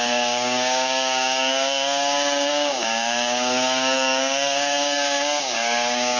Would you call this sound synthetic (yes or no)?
yes